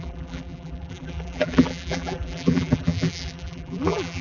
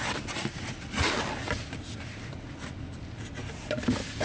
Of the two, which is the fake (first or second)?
first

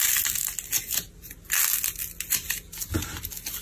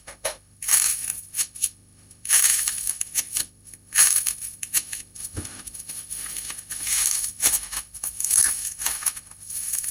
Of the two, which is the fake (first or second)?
second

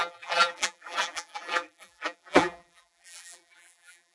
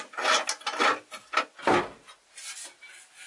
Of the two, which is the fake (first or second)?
first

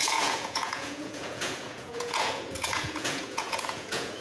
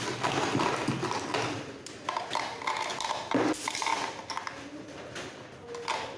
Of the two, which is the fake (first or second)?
first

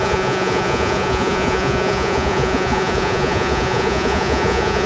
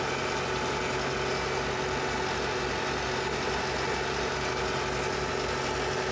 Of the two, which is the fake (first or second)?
first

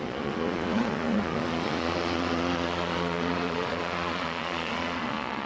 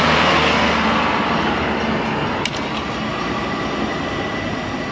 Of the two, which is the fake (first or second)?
first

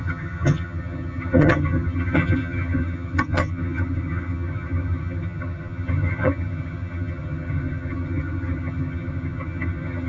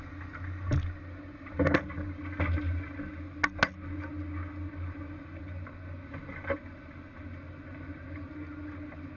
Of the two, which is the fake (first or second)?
first